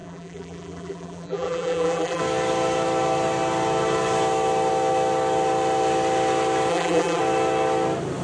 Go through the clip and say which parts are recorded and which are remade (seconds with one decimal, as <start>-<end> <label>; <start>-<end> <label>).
0.0-2.2 remade; 2.2-6.7 recorded; 6.7-7.2 remade; 7.2-8.2 recorded